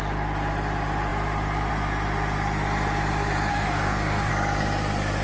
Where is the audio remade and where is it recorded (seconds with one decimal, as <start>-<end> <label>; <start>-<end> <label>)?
0.0-3.5 recorded; 3.5-4.3 remade; 4.3-5.2 recorded